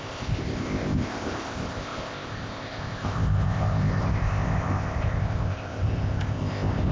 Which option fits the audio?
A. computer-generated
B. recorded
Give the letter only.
A